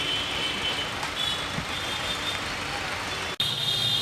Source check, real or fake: real